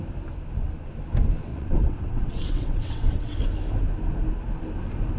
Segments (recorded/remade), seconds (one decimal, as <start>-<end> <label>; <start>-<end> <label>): 0.0-1.5 recorded; 1.5-3.4 remade; 3.4-5.2 recorded